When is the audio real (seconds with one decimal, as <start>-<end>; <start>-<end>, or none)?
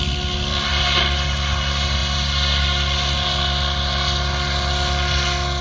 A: 0.0-5.6